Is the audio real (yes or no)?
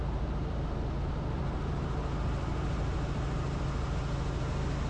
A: yes